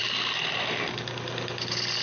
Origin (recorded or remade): recorded